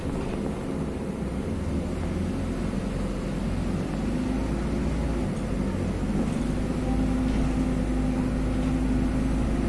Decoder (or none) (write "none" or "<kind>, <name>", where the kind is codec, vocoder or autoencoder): none